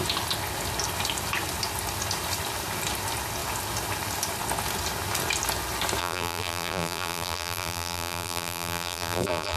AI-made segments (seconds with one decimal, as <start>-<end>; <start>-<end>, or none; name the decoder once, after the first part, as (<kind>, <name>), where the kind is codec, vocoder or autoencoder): 6.0-9.6 (vocoder, BigVGAN v2)